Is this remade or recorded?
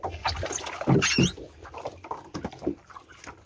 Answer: recorded